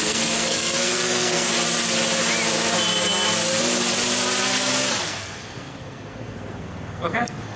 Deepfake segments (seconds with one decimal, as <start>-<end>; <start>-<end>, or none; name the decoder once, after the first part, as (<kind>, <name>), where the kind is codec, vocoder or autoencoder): 0.0-1.5 (codec, SNAC); 5.0-7.6